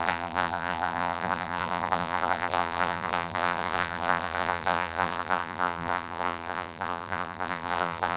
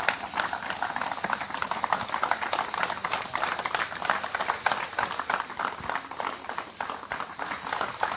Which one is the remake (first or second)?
first